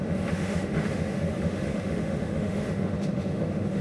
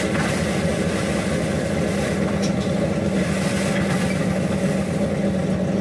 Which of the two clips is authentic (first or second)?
second